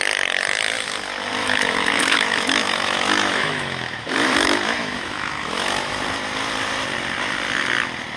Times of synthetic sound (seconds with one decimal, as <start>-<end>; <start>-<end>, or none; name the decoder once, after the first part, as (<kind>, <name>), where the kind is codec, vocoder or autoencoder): 1.4-6.0 (autoencoder, DAC-VAE)

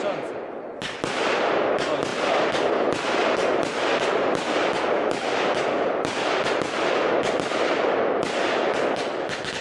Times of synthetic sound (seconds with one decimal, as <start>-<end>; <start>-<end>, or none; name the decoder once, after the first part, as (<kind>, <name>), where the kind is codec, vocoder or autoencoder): none

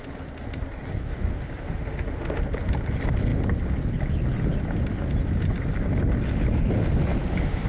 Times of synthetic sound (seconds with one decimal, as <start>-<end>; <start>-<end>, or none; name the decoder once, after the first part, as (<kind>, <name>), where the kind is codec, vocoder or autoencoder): 1.1-2.4 (autoencoder, DAC-VAE); 7.2-7.7

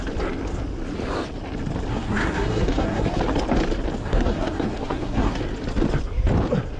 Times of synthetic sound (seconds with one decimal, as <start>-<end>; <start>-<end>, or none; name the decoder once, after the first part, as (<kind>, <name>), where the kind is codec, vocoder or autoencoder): 1.9-3.2 (codec, SNAC); 4.0-5.4

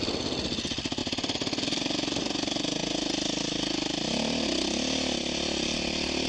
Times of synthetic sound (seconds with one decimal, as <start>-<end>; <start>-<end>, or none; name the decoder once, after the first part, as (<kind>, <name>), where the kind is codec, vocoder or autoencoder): 1.0-2.2 (vocoder, BigVGAN v2)

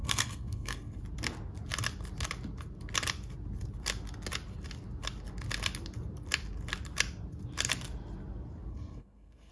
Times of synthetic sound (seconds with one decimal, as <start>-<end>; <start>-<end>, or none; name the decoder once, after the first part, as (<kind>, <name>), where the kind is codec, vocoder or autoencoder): 0.0-1.0 (codec, SNAC); 8.7-9.5

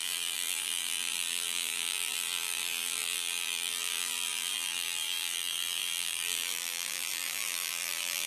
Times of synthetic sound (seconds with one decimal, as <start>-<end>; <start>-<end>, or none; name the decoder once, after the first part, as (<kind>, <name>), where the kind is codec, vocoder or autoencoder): 0.0-8.3 (vocoder, BigVGAN v2)